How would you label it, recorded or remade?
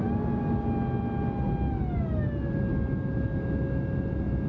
recorded